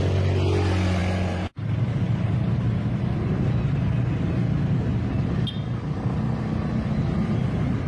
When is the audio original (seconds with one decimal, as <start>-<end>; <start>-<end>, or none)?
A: 0.0-7.9